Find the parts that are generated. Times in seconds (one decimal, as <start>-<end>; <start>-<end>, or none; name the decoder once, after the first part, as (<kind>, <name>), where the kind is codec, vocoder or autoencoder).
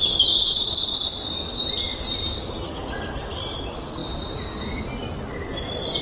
0.0-0.9 (vocoder, BigVGAN v2); 2.4-4.0; 5.0-6.0